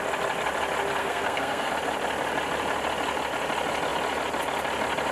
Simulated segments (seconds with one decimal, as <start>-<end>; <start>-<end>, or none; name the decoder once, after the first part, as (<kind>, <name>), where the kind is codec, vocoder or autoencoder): 1.0-1.7 (codec, SNAC)